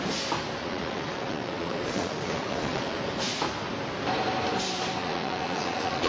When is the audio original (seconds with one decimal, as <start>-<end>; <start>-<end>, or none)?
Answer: 0.0-0.6; 3.0-5.0